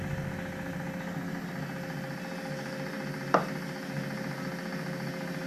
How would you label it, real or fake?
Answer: real